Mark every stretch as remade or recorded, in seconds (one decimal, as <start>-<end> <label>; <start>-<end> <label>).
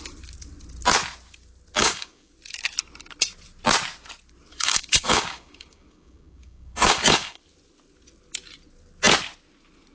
0.0-1.8 recorded; 1.8-2.3 remade; 2.3-4.5 recorded; 4.5-7.4 remade; 7.4-9.9 recorded